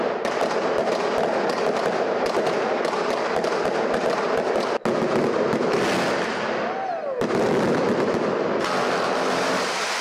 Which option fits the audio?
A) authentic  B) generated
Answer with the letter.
A